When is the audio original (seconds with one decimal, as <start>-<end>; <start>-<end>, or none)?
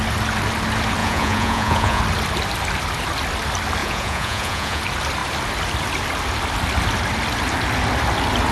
0.0-1.0; 2.0-3.8; 4.8-8.5